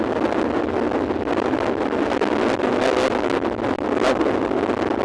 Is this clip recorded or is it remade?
recorded